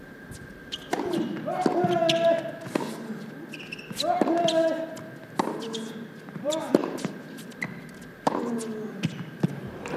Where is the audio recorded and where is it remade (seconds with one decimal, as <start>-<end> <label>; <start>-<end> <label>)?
0.0-0.8 remade; 0.8-5.9 recorded; 5.9-6.8 remade; 6.8-9.5 recorded; 9.5-10.0 remade